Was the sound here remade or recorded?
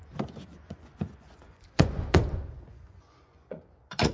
remade